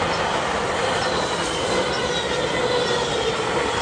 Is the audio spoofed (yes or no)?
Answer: no